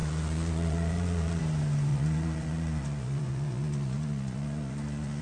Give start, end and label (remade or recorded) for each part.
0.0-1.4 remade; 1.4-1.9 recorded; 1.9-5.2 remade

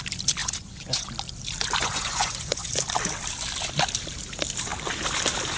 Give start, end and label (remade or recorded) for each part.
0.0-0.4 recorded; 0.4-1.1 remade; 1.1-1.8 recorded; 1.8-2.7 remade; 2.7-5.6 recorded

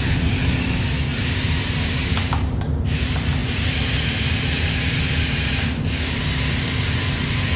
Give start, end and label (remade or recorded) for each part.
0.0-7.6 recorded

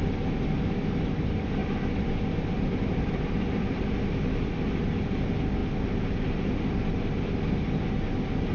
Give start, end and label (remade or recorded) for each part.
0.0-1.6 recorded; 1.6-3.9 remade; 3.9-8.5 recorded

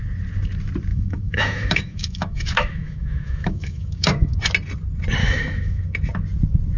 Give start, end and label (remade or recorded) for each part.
0.0-0.9 recorded; 0.9-4.3 remade; 4.3-5.2 recorded; 5.2-5.9 remade; 5.9-6.8 recorded

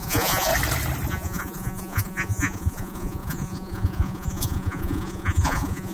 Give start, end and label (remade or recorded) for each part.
0.0-0.5 remade; 0.5-1.1 recorded; 1.1-5.9 remade